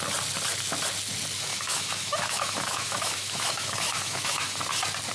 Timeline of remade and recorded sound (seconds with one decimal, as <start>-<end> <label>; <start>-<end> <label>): 0.0-1.5 recorded; 1.5-4.6 remade; 4.6-5.1 recorded